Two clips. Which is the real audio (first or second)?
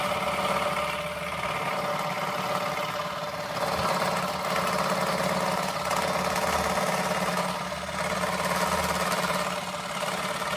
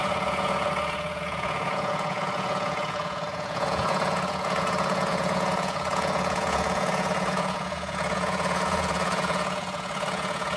first